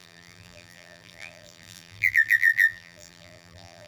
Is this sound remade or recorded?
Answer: remade